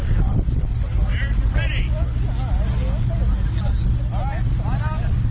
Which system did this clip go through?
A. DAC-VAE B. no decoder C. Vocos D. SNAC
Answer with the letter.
B